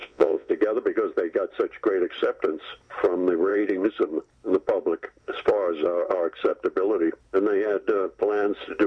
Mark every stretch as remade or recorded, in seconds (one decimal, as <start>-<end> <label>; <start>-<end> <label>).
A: 0.0-0.5 remade; 0.5-8.9 recorded